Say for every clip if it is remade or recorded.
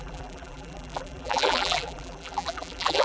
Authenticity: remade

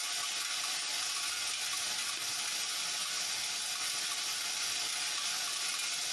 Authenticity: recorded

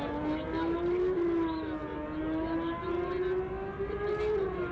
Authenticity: recorded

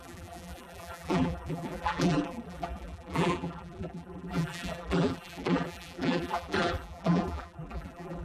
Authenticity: remade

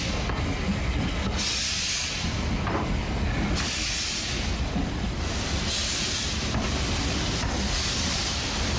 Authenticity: recorded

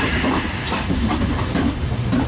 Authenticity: remade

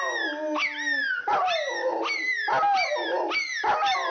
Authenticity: recorded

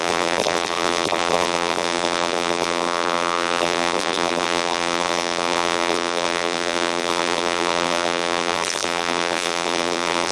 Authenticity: remade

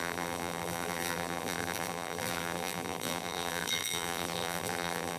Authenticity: remade